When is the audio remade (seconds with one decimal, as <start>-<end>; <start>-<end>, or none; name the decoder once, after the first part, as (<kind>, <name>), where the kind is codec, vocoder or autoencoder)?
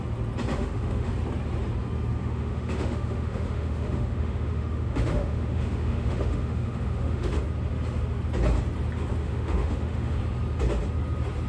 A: 0.5-1.1 (autoencoder, DAC-VAE); 2.2-7.4; 9.2-10.2